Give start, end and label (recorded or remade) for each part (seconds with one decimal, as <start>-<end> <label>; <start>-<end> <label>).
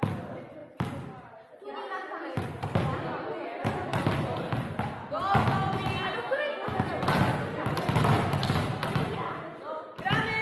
0.0-10.4 recorded